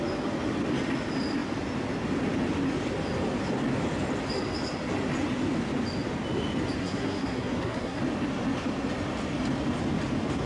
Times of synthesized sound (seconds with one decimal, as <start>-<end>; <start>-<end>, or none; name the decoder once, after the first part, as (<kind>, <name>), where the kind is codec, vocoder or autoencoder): 6.8-8.0 (codec, SNAC)